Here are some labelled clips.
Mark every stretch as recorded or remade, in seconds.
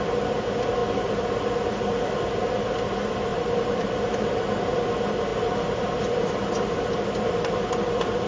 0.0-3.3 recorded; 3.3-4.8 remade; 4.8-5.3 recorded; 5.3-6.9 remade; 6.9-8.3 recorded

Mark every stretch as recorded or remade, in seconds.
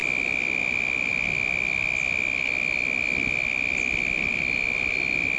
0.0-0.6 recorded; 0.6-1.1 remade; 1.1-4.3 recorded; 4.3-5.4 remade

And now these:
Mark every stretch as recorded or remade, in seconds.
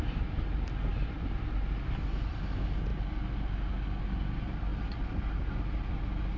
0.0-0.9 recorded; 0.9-2.4 remade; 2.4-4.7 recorded; 4.7-6.0 remade; 6.0-6.4 recorded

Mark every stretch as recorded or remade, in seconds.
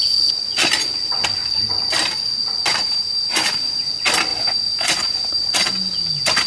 0.0-2.6 recorded; 2.6-3.9 remade; 3.9-4.3 recorded; 4.3-5.5 remade; 5.5-6.5 recorded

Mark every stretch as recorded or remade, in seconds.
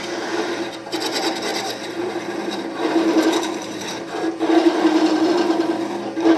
0.0-1.5 recorded; 1.5-5.3 remade; 5.3-6.4 recorded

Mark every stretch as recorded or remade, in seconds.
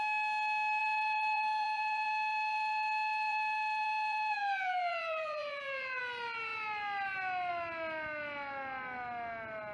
0.0-0.8 recorded; 0.8-6.0 remade; 6.0-9.7 recorded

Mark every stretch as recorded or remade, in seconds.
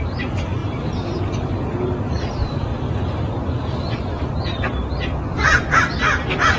0.0-2.7 remade; 2.7-3.7 recorded; 3.7-4.8 remade; 4.8-6.6 recorded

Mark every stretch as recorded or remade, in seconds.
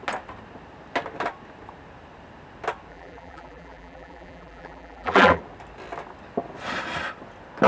0.0-2.9 recorded; 2.9-5.4 remade; 5.4-7.7 recorded